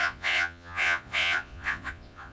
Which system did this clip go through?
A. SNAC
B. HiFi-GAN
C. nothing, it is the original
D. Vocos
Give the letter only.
D